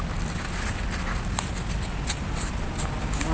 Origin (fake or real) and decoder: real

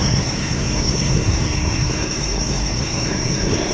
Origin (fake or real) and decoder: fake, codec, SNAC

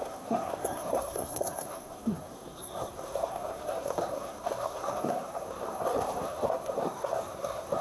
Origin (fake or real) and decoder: fake, codec, SNAC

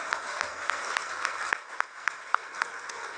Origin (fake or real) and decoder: fake, codec, SNAC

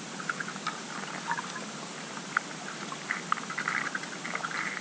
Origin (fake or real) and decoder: real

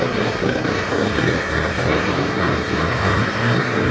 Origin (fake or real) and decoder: fake, codec, SNAC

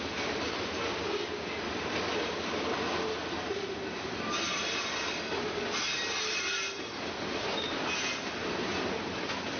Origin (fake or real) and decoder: real